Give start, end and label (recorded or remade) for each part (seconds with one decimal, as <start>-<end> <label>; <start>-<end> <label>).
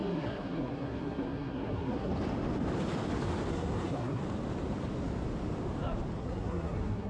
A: 0.0-2.1 remade; 2.1-3.5 recorded; 3.5-4.2 remade; 4.2-6.2 recorded; 6.2-7.1 remade